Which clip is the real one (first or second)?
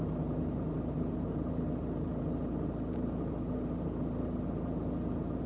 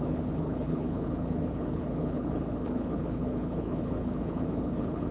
first